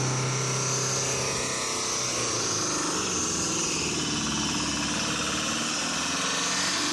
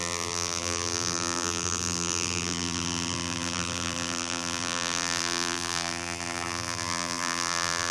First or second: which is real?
first